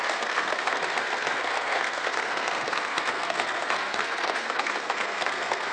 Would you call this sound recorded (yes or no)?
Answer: no